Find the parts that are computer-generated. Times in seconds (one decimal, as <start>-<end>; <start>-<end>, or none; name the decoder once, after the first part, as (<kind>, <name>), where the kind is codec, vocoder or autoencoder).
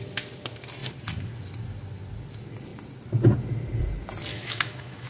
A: 4.3-5.1 (autoencoder, DAC-VAE)